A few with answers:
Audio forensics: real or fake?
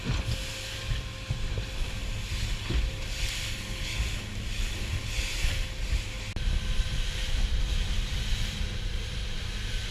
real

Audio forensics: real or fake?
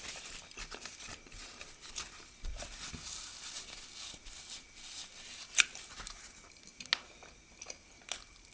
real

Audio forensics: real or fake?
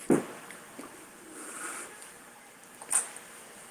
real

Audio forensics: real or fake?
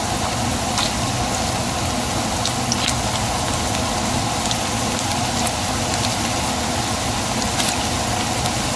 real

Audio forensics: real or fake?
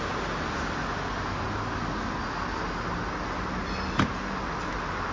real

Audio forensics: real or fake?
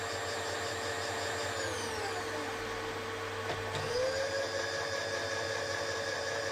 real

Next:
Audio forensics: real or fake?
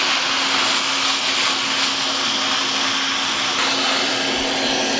real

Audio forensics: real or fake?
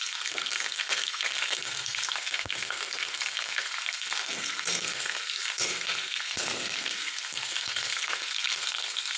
fake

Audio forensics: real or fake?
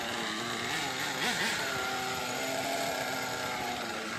real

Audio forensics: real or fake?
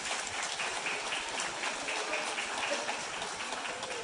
real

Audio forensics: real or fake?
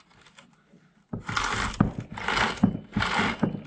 real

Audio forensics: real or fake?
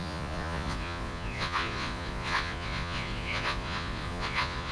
fake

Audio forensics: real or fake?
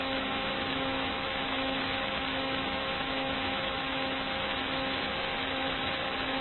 fake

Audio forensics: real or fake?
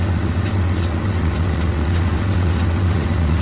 fake